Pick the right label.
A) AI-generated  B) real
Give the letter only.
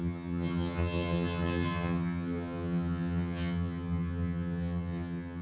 A